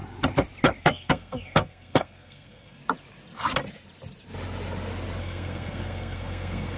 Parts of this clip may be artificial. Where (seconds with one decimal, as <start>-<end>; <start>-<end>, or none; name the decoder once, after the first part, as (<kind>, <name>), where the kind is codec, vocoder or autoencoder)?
0.8-2.8 (codec, SNAC); 5.2-6.8